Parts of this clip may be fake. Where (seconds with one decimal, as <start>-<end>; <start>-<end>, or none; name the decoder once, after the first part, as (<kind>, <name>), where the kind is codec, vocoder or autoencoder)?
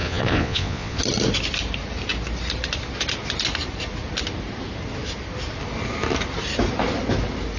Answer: 0.0-1.0 (vocoder, Vocos)